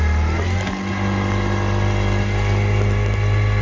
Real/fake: real